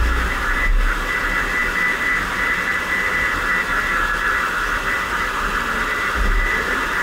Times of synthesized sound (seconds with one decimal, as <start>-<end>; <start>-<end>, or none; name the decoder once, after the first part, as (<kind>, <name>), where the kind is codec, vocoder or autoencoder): none